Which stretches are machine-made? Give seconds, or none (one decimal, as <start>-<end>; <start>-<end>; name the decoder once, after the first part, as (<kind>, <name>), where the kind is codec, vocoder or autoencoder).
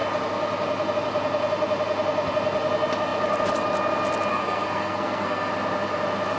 4.3-5.5 (codec, SNAC)